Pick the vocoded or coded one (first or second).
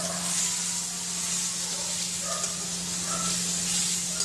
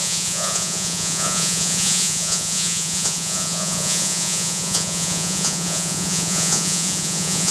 second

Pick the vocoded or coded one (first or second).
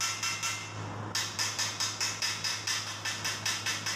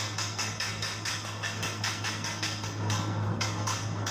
second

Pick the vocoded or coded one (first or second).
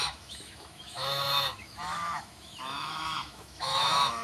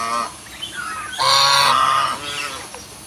first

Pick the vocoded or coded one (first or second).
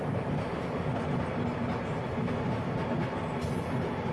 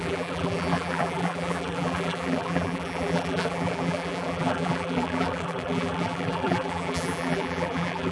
second